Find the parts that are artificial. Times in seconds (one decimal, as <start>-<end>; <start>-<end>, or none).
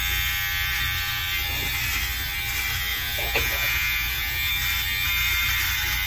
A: 2.9-4.5